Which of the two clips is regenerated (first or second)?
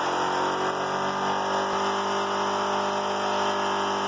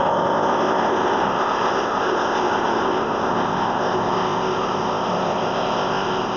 second